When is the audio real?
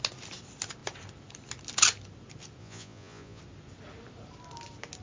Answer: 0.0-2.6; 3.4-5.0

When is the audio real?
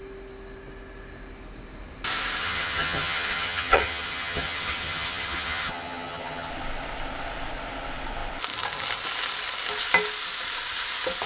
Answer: 0.0-2.4; 6.5-11.3